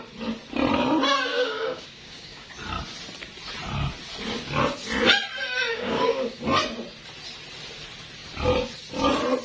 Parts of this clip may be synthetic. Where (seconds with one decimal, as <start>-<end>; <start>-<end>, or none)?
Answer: 1.3-2.5; 5.7-6.4